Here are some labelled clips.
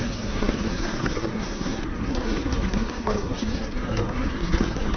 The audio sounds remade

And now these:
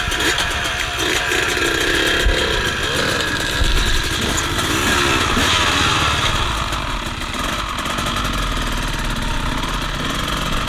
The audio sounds recorded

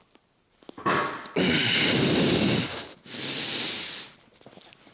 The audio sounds recorded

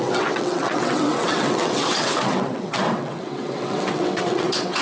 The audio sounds remade